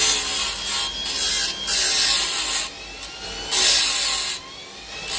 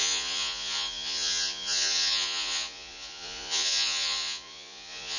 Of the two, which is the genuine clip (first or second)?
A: first